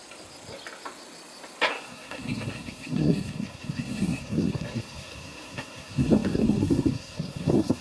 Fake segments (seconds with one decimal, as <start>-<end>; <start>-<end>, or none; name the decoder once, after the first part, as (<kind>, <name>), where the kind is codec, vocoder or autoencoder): 1.7-7.8 (codec, SNAC)